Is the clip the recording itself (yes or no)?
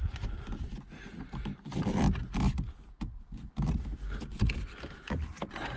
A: yes